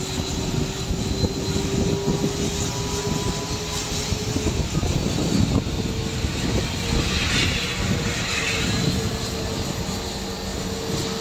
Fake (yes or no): no